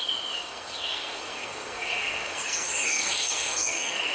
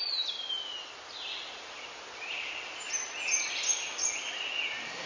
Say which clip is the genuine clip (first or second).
second